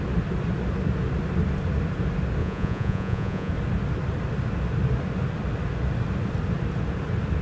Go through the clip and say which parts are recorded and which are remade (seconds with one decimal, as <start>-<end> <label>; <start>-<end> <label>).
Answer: 0.0-2.4 recorded; 2.4-3.5 remade; 3.5-7.4 recorded